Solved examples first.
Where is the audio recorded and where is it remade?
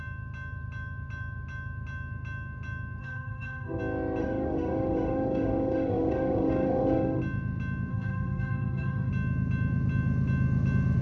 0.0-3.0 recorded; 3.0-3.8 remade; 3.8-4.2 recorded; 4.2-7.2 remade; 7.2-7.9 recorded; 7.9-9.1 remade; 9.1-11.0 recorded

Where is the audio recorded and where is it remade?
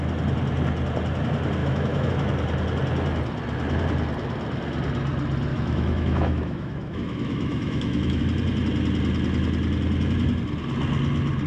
0.0-1.6 recorded; 1.6-2.1 remade; 2.1-5.5 recorded; 5.5-8.2 remade; 8.2-11.5 recorded